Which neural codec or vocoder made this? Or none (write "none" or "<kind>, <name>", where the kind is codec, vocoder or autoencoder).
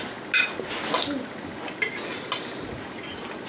none